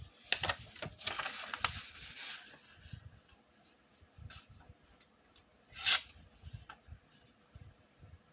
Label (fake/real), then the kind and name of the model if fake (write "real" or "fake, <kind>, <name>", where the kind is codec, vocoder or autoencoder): real